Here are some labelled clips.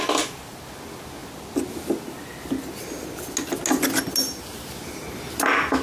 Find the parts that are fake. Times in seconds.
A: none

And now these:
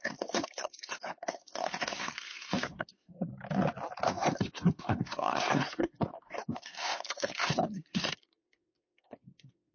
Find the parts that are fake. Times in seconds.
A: 0.0-3.3; 4.1-9.7

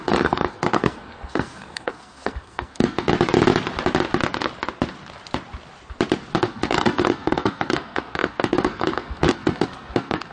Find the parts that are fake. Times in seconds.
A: 0.0-3.1; 6.4-10.3

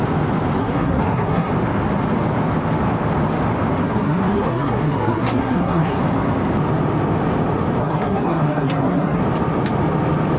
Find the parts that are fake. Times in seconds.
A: 0.6-1.5; 3.8-6.0; 7.8-9.2

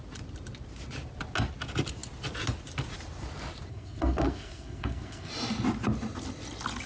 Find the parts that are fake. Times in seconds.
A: 3.7-5.3

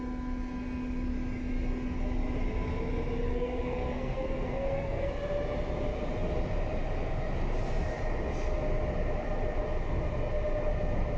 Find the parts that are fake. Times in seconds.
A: 3.3-5.1